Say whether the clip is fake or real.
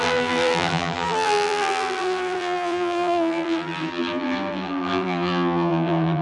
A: fake